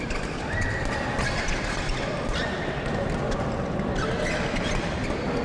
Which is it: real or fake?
real